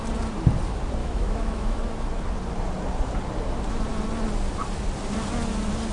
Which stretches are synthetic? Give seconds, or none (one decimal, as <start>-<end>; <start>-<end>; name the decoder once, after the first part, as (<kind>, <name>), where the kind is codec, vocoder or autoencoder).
1.0-1.8 (autoencoder, DAC-VAE)